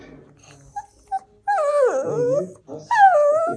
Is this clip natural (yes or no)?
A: yes